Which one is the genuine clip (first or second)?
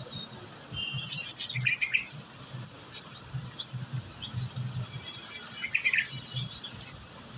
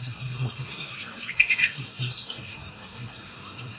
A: first